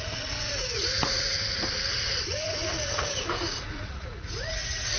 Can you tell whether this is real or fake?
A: fake